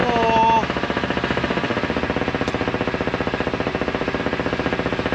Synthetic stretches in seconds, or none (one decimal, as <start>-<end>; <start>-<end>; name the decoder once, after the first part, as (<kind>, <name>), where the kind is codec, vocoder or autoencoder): 3.7-4.2 (vocoder, BigVGAN v2)